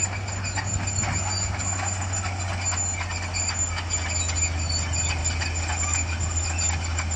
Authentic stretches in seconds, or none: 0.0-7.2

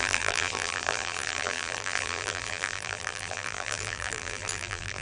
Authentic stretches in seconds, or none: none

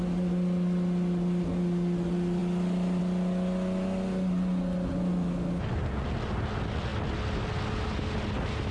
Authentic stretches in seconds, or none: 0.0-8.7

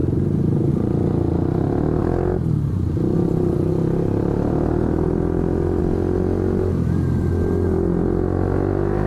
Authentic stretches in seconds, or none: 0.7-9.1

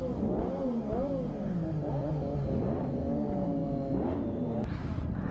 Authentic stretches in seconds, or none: 0.0-5.3

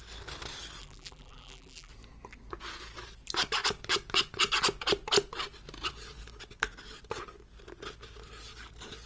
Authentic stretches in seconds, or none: 0.0-0.8; 1.9-9.1

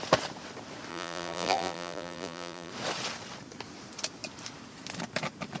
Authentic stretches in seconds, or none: 0.0-0.9; 2.7-5.6